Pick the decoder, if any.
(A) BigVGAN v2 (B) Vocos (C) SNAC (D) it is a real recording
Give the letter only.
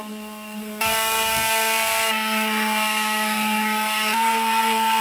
C